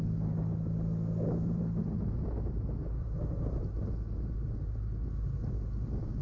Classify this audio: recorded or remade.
recorded